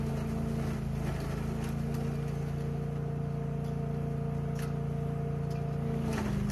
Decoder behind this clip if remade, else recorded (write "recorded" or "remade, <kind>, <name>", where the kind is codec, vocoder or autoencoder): recorded